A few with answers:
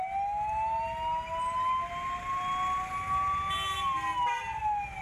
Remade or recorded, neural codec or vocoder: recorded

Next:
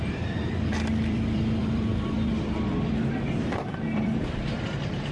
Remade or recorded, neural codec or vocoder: remade, vocoder, BigVGAN v2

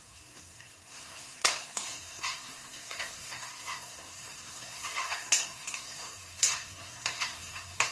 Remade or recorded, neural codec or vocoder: remade, codec, SNAC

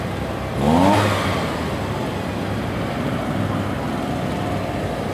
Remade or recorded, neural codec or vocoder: recorded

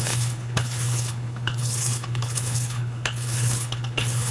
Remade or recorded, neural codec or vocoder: remade, codec, HILCodec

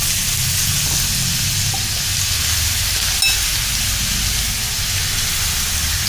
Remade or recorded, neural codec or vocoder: recorded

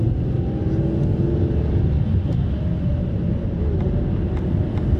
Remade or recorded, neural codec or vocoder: recorded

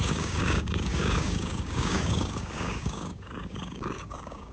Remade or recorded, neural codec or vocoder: remade, codec, DAC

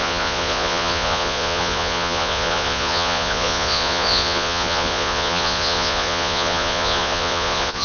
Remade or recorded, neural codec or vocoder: remade, vocoder, Vocos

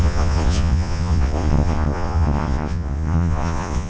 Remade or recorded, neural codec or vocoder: remade, vocoder, Vocos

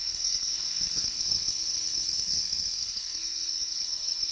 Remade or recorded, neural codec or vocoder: remade, codec, SNAC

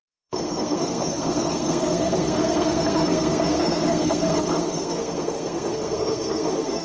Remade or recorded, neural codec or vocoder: remade, codec, SNAC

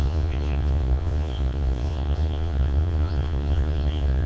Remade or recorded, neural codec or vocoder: remade, vocoder, Vocos